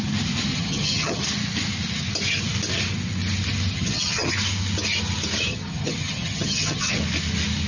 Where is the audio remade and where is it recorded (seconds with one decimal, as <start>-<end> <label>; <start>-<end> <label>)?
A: 0.0-0.5 recorded; 0.5-1.2 remade; 1.2-3.7 recorded; 3.7-4.3 remade; 4.3-5.5 recorded; 5.5-7.0 remade; 7.0-7.7 recorded

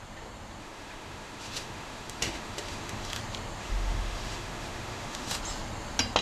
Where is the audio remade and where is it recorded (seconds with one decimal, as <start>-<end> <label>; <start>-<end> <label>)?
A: 0.0-0.6 recorded; 0.6-3.2 remade; 3.2-3.6 recorded; 3.6-5.4 remade; 5.4-6.2 recorded

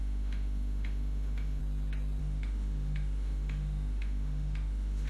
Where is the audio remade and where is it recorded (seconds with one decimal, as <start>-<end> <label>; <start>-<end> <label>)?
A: 0.0-1.6 remade; 1.6-2.2 recorded; 2.2-5.1 remade

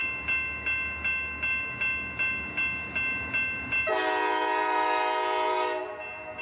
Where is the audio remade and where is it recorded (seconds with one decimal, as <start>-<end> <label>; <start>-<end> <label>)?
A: 0.0-6.4 recorded